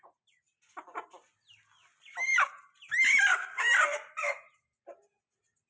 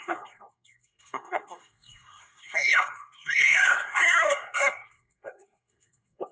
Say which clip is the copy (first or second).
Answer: second